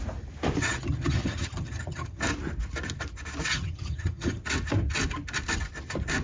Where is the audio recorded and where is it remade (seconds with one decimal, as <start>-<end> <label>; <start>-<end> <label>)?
0.0-0.6 recorded; 0.6-2.2 remade; 2.2-3.5 recorded; 3.5-4.4 remade; 4.4-6.2 recorded